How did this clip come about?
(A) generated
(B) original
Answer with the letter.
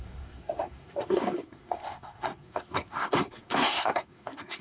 A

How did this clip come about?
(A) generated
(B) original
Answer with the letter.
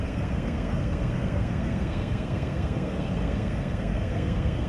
A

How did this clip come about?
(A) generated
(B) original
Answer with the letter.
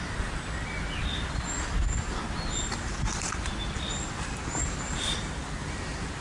B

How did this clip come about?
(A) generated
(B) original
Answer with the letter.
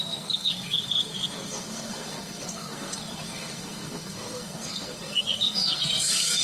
A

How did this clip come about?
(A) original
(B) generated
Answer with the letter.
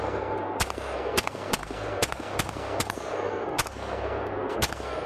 B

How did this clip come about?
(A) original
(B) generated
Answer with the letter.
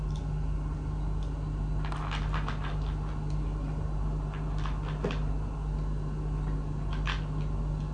A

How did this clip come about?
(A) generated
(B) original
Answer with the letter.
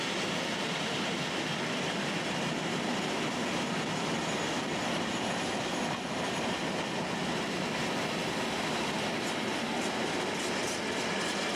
B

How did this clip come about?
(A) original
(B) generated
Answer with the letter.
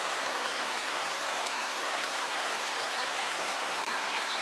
B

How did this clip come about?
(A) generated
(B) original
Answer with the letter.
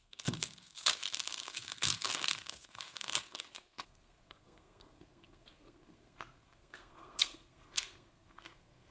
A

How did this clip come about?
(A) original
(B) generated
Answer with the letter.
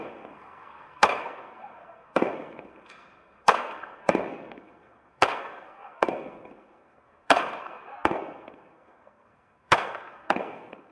B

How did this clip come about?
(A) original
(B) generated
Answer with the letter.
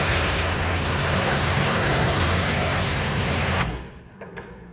B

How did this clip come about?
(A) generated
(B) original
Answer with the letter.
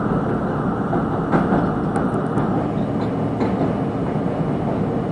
B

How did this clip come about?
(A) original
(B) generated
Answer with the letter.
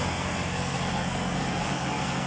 B